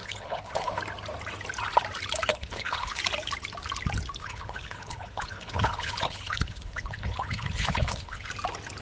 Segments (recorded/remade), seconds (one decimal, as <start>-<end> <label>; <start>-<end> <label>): 0.0-0.8 remade; 0.8-2.3 recorded; 2.3-3.0 remade; 3.0-4.2 recorded; 4.2-8.3 remade; 8.3-8.8 recorded